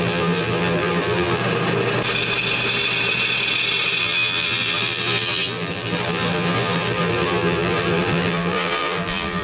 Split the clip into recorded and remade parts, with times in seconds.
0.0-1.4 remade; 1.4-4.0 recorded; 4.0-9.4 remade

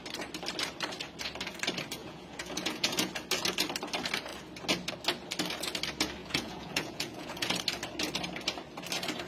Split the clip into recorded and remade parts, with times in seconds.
0.0-2.0 recorded; 2.0-3.1 remade; 3.1-6.2 recorded; 6.2-7.6 remade; 7.6-9.3 recorded